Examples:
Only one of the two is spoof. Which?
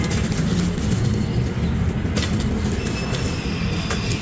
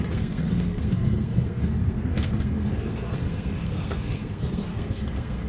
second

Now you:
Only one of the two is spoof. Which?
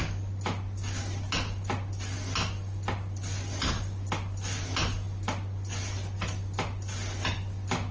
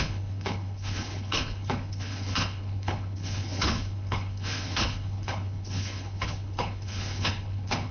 second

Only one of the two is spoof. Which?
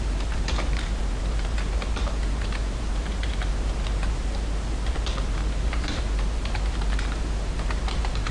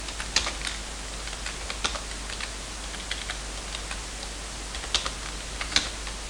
first